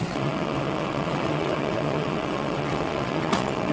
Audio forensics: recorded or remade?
remade